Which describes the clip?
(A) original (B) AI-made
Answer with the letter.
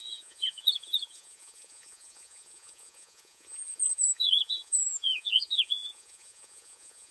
B